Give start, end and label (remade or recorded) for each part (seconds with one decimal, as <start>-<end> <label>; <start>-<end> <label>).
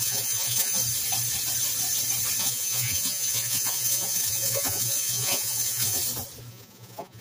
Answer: 0.0-0.8 remade; 0.8-2.4 recorded; 2.4-6.0 remade; 6.0-6.5 recorded; 6.5-7.2 remade